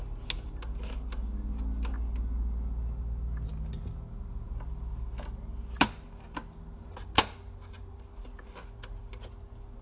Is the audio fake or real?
real